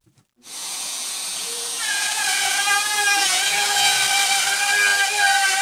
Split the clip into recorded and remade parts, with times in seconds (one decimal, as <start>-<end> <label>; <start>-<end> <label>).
0.0-0.6 recorded; 0.6-4.0 remade; 4.0-5.6 recorded